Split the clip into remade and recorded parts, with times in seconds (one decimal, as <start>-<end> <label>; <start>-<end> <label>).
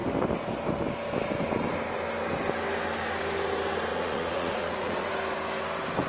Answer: 0.0-3.9 recorded; 3.9-5.1 remade; 5.1-6.1 recorded